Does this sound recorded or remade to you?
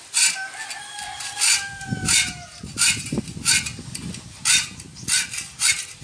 recorded